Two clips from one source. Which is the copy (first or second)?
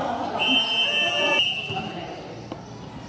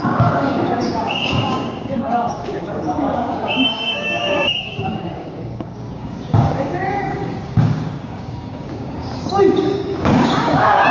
second